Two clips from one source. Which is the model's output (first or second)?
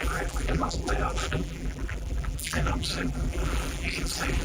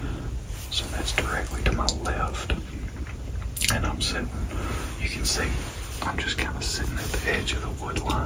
first